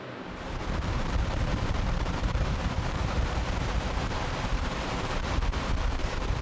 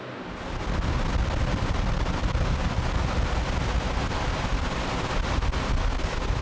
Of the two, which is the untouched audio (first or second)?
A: second